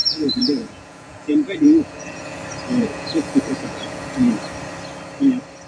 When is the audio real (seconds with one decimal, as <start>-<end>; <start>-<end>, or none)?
2.4-2.8; 4.3-5.7